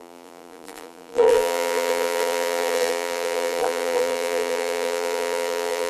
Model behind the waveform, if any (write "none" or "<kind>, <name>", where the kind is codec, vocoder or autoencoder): vocoder, BigVGAN v2